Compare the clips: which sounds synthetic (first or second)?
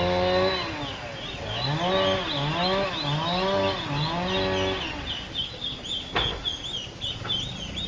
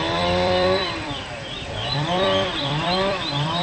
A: second